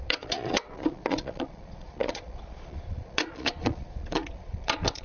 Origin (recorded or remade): remade